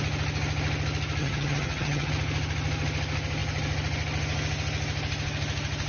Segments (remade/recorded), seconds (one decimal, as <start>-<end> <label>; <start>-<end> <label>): 0.0-1.2 recorded; 1.2-2.1 remade; 2.1-5.9 recorded